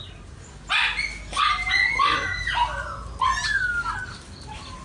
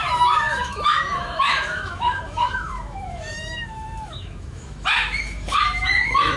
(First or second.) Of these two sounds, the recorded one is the first